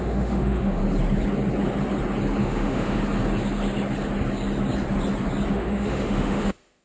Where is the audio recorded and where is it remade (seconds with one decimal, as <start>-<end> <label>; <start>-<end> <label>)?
0.0-0.8 remade; 0.8-2.4 recorded; 2.4-3.0 remade; 3.0-5.5 recorded; 5.5-6.8 remade